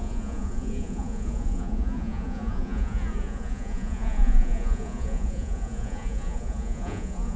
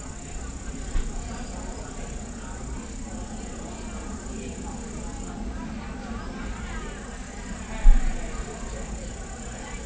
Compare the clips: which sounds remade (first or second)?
first